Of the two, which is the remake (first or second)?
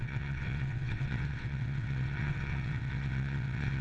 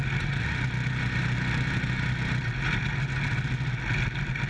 first